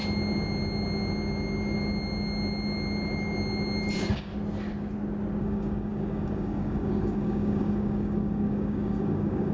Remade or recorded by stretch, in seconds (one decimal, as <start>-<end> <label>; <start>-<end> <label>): 0.0-3.9 recorded; 3.9-4.3 remade; 4.3-5.4 recorded; 5.4-9.5 remade